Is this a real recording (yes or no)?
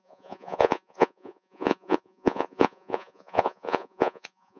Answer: no